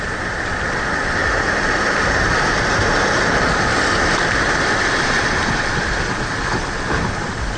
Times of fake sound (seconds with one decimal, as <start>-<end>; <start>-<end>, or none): none